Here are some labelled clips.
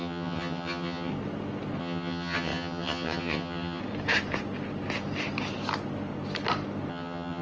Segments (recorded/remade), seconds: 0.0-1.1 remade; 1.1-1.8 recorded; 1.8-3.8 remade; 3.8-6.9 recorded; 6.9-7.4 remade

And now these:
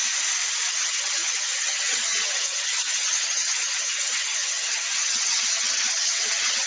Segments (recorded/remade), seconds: 0.0-0.7 recorded; 0.7-6.7 remade

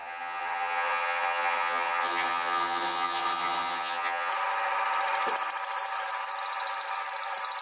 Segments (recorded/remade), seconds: 0.0-4.3 remade; 4.3-7.6 recorded